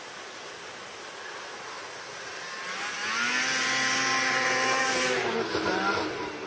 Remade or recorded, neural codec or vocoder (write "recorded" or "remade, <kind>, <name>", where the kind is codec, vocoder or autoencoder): recorded